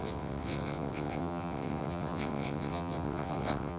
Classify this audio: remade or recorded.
remade